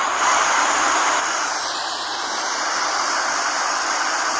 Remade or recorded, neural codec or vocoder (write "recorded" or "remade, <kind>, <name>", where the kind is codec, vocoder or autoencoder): remade, vocoder, BigVGAN v2